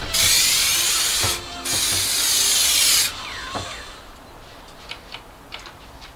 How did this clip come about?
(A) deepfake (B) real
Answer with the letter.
B